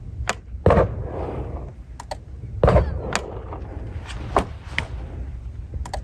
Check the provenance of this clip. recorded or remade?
recorded